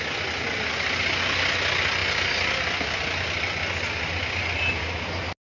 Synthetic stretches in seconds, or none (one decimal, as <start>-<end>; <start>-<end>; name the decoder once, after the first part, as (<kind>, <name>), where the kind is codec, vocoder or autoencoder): none